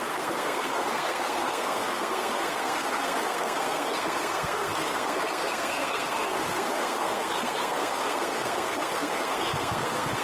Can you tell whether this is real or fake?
fake